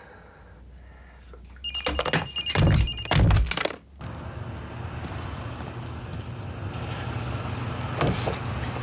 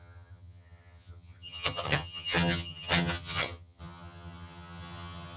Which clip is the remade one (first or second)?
second